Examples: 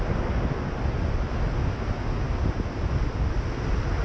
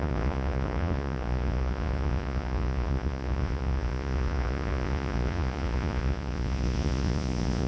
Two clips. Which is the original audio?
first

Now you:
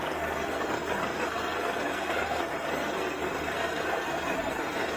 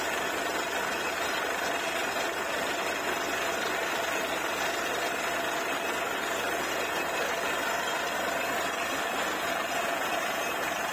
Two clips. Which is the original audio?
second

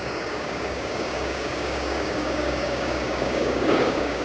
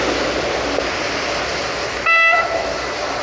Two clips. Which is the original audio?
second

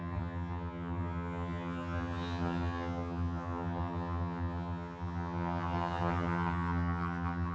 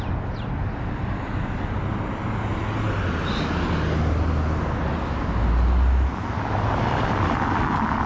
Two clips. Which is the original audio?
second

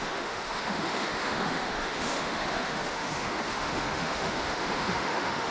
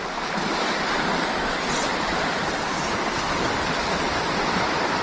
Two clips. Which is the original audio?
second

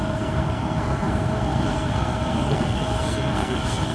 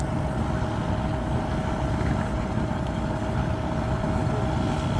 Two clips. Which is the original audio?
second